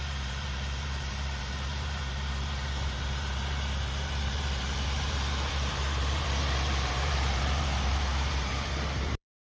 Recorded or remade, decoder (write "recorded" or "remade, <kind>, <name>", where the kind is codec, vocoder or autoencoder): remade, vocoder, BigVGAN v2